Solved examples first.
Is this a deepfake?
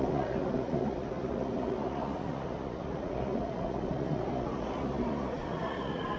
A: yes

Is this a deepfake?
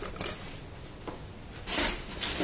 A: no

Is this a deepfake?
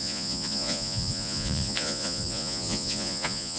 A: yes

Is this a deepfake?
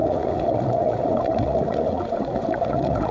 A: yes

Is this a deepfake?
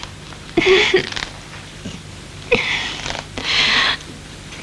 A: no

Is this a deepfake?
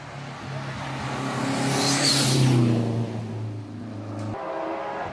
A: no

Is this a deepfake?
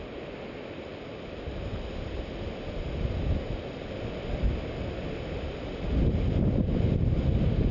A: no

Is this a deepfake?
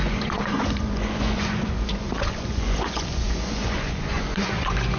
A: yes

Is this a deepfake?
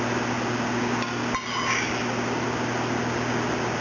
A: no